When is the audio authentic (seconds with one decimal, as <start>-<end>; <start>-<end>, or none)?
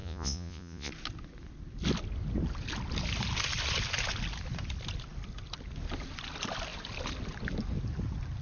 0.9-8.4